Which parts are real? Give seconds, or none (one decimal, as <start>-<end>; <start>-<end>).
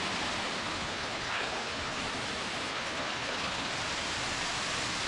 0.0-0.6; 2.0-2.7; 3.7-5.1